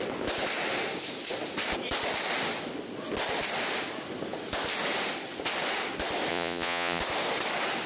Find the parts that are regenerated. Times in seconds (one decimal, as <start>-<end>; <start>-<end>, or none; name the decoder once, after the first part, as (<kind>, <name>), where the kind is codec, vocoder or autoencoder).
6.3-7.0 (vocoder, Vocos)